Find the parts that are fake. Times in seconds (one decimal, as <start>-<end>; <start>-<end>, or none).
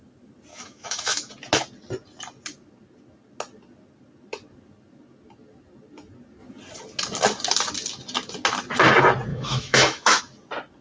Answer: 0.5-1.3; 9.3-10.2